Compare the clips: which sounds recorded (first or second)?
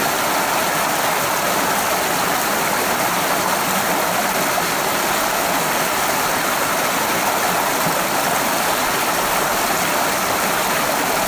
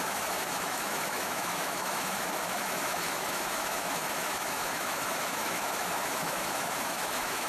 first